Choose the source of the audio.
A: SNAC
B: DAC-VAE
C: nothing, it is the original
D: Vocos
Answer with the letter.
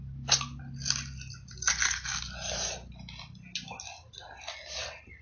C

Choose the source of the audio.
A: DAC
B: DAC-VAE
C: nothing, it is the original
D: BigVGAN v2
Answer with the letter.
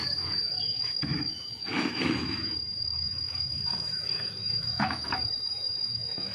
B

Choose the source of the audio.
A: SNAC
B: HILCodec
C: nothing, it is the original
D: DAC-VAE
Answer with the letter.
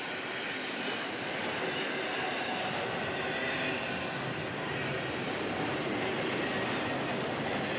C